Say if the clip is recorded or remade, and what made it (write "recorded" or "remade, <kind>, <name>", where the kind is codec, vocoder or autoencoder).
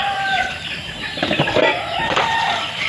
remade, vocoder, BigVGAN v2